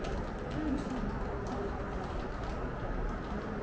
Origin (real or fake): real